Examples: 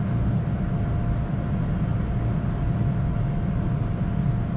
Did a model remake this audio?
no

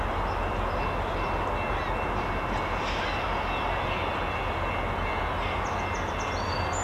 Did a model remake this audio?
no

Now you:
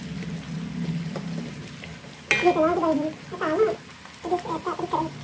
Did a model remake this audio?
no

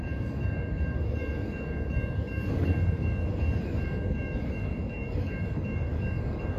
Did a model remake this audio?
yes